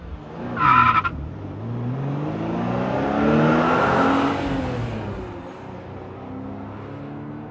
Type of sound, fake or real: real